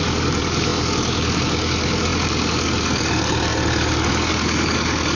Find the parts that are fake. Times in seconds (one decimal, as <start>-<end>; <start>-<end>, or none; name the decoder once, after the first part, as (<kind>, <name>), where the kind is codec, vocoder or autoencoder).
0.0-5.2 (codec, DAC)